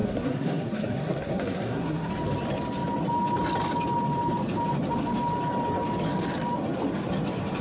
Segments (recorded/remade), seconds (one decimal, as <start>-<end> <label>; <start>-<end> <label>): 0.0-2.1 remade; 2.1-7.6 recorded